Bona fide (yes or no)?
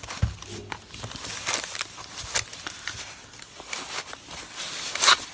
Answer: yes